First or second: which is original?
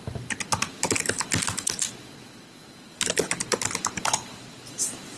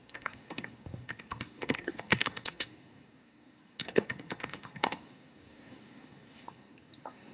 first